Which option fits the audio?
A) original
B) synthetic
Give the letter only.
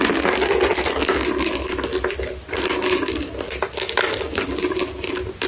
A